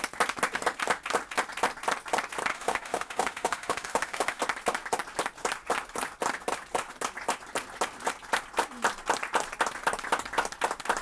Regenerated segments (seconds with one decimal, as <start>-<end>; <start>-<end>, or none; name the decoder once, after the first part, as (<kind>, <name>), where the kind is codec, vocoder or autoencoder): 2.5-4.4 (autoencoder, DAC-VAE)